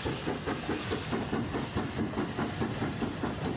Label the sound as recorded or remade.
recorded